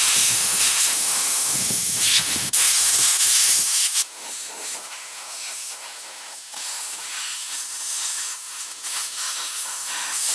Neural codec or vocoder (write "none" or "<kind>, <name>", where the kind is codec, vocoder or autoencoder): autoencoder, DAC-VAE